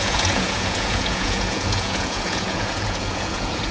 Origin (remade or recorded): remade